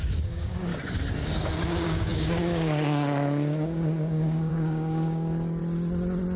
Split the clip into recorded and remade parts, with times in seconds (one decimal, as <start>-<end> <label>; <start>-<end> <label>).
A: 0.0-0.7 remade; 0.7-1.7 recorded; 1.7-5.6 remade; 5.6-6.4 recorded